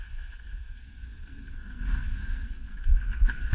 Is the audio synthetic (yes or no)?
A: yes